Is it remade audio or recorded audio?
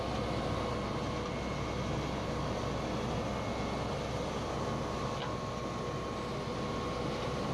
recorded